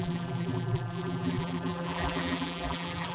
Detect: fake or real fake